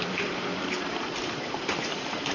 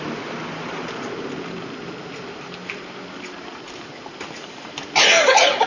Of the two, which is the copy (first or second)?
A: first